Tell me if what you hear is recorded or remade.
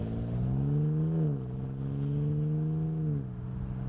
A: recorded